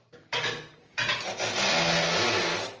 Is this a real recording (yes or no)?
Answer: yes